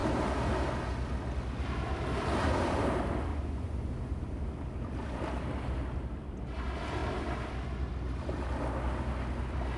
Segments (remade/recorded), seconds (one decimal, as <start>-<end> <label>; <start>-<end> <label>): 0.0-3.3 recorded; 3.3-3.9 remade; 3.9-9.8 recorded